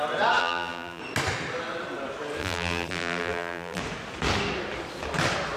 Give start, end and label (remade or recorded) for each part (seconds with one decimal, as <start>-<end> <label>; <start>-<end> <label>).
0.0-0.4 recorded; 0.4-1.0 remade; 1.0-2.4 recorded; 2.4-3.8 remade; 3.8-5.6 recorded